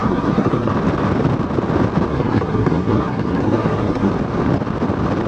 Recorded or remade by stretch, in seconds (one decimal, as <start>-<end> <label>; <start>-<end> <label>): 0.0-0.7 remade; 0.7-2.1 recorded; 2.1-4.1 remade; 4.1-5.3 recorded